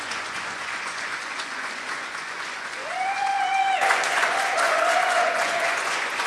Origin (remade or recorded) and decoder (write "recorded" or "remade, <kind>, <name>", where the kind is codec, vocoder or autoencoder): remade, vocoder, Vocos